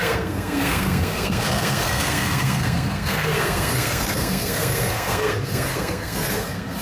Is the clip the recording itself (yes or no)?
no